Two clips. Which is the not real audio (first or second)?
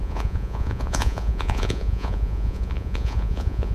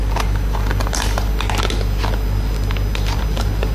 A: first